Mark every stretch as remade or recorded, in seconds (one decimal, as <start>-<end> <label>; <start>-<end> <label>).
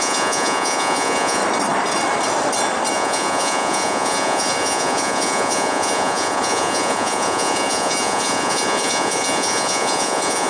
0.0-1.4 remade; 1.4-2.9 recorded; 2.9-10.5 remade